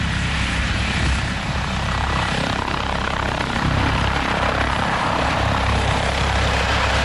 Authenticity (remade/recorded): remade